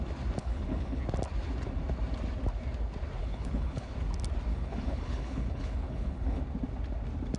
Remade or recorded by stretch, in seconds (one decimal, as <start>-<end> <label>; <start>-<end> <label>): 0.0-0.4 recorded; 0.4-1.0 remade; 1.0-3.2 recorded; 3.2-3.9 remade; 3.9-4.5 recorded; 4.5-6.4 remade; 6.4-7.4 recorded